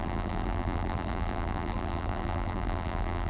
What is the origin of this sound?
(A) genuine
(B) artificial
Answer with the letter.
B